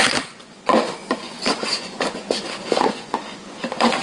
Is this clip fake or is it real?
fake